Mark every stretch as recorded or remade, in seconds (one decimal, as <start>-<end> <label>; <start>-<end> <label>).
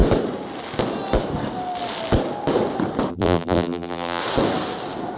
0.0-3.1 recorded; 3.1-4.2 remade; 4.2-5.2 recorded